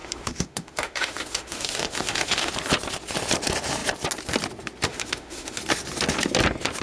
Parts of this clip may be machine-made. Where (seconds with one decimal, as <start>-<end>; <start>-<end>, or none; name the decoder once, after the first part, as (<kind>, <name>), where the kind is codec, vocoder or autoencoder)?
0.0-2.5 (autoencoder, DAC-VAE); 4.9-5.6

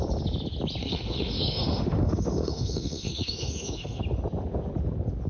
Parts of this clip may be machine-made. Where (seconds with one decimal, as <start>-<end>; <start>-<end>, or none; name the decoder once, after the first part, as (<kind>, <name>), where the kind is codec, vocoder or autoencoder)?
0.8-4.0 (autoencoder, DAC-VAE)

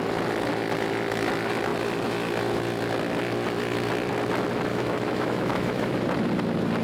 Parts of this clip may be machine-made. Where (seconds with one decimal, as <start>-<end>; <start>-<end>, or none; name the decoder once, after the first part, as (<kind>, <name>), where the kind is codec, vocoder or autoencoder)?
4.7-6.0 (autoencoder, DAC-VAE)

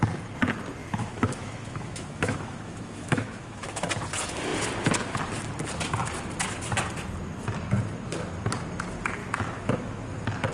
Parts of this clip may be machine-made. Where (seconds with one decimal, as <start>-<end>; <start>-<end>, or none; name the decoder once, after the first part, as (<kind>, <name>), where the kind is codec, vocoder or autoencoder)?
0.8-3.9 (autoencoder, DAC-VAE); 9.2-10.0